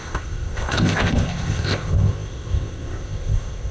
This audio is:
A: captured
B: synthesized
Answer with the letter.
B